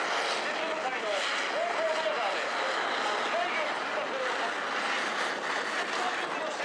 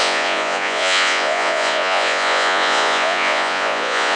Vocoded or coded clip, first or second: second